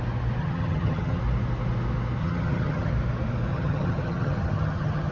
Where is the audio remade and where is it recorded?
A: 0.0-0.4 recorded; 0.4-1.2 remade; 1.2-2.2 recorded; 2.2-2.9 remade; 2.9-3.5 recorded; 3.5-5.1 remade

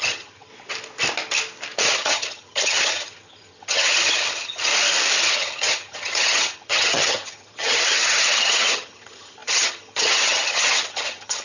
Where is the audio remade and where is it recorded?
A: 0.0-0.5 remade; 0.5-1.8 recorded; 1.8-4.7 remade; 4.7-5.2 recorded; 5.2-11.4 remade

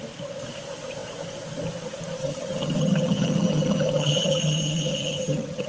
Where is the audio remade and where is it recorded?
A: 0.0-2.2 recorded; 2.2-5.7 remade

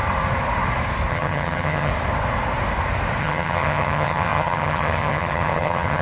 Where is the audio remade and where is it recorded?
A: 0.0-1.1 recorded; 1.1-1.9 remade; 1.9-3.2 recorded; 3.2-6.0 remade